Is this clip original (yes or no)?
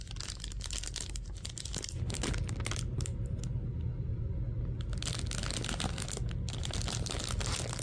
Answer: yes